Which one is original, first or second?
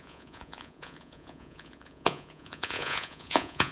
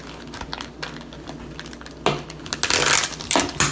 second